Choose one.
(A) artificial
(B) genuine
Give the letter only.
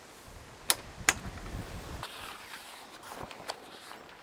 B